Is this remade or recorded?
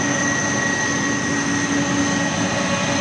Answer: recorded